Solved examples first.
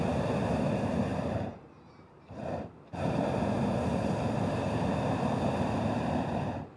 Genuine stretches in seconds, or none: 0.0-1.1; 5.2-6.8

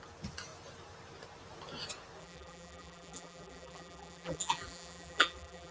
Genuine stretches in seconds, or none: 0.0-2.2

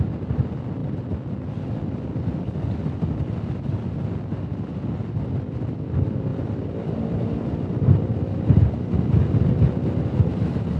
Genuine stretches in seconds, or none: 0.0-10.8

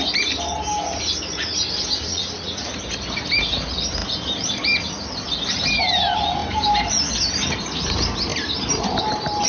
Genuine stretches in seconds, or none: 0.0-2.1; 2.7-9.5

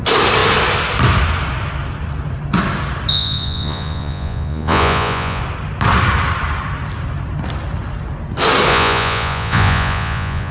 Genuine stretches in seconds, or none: 0.0-3.1; 5.4-8.7

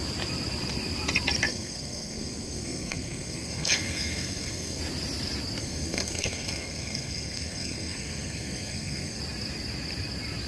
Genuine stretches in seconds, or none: 0.0-1.5; 4.8-5.6; 9.2-10.5

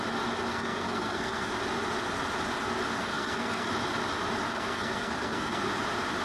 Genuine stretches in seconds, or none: 0.0-0.5; 1.5-3.0; 3.7-4.5; 5.6-6.2

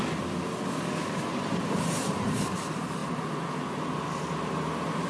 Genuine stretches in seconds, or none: 0.0-1.3; 2.3-5.1